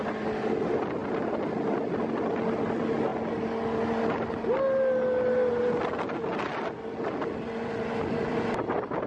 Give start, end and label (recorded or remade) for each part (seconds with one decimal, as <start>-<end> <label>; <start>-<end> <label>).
0.0-9.1 recorded